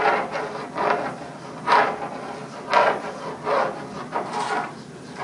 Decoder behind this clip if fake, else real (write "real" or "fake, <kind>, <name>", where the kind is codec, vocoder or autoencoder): real